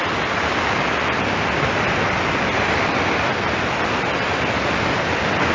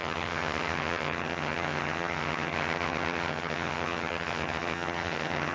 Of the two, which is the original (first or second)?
first